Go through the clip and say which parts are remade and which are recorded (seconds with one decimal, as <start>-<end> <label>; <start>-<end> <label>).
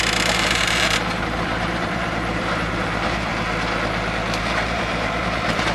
0.0-3.3 remade; 3.3-4.4 recorded; 4.4-5.7 remade